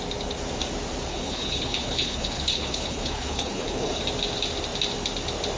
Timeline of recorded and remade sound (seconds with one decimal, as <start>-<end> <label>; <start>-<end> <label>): 0.0-1.1 recorded; 1.1-4.0 remade; 4.0-5.6 recorded